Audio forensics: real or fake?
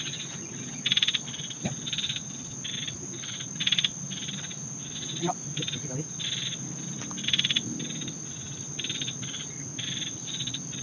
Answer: real